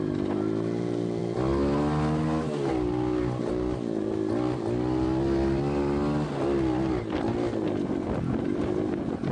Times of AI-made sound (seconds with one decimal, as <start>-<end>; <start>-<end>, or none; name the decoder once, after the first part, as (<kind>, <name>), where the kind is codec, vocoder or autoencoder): none